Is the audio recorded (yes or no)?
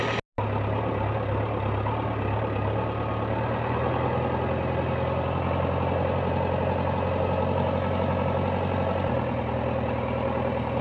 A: yes